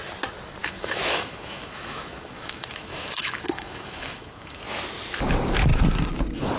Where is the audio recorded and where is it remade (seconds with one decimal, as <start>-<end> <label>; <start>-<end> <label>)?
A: 0.0-0.6 recorded; 0.6-4.6 remade; 4.6-6.6 recorded